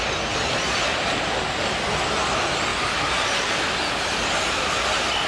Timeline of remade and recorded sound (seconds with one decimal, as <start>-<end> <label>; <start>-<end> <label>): 0.0-0.9 recorded; 0.9-1.7 remade; 1.7-5.3 recorded